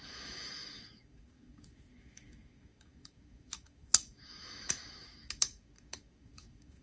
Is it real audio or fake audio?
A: fake